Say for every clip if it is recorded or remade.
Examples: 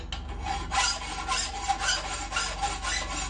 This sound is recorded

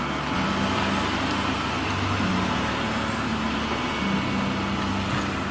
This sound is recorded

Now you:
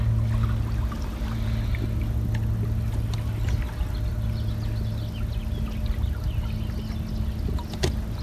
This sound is recorded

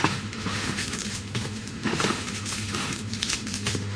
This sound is remade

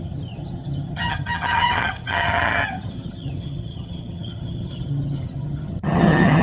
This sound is remade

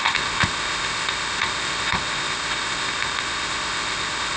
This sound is remade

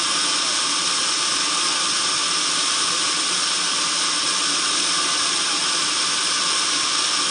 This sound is recorded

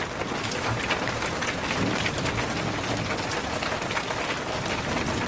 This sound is recorded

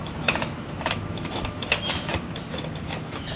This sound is remade